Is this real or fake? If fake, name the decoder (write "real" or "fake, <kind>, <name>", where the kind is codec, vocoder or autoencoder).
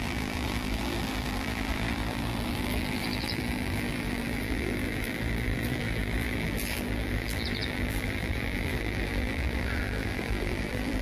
fake, vocoder, BigVGAN v2